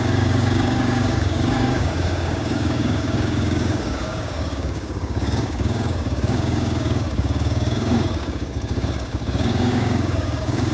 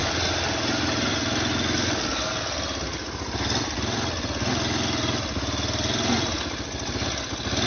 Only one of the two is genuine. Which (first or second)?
second